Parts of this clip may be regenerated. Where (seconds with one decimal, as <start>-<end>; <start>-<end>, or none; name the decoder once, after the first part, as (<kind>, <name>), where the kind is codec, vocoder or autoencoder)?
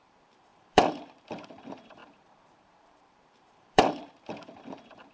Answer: 0.0-5.1 (vocoder, BigVGAN v2)